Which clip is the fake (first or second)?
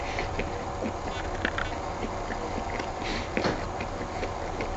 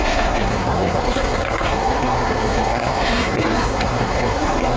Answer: second